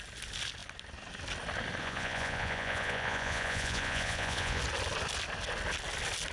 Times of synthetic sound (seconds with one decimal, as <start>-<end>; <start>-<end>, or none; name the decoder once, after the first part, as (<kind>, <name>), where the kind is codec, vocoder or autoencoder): 1.8-4.6 (vocoder, Vocos)